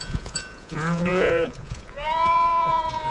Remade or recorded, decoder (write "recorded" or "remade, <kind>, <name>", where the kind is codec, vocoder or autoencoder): remade, vocoder, Vocos